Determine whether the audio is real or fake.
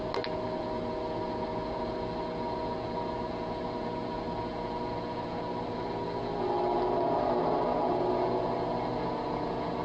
real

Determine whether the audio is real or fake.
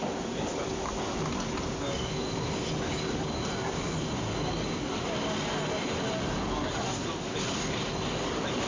real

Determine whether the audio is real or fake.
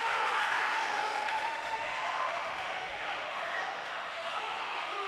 fake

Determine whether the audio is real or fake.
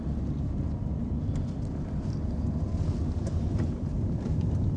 real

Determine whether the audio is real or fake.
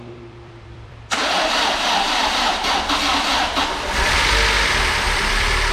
fake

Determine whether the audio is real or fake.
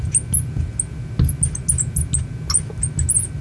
real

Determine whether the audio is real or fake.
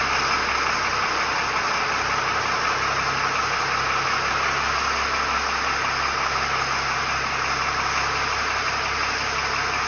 real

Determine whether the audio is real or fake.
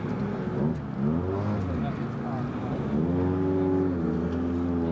real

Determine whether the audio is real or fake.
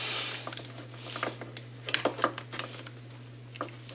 real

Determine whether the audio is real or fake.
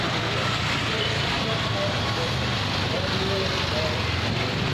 real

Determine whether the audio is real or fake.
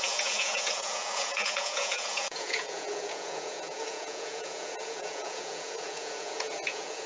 fake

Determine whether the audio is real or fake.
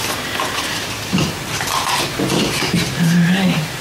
fake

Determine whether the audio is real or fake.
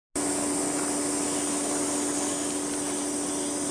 real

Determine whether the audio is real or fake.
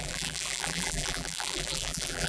fake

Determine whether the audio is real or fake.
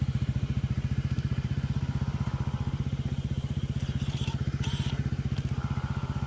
fake